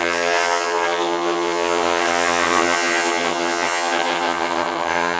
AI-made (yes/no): yes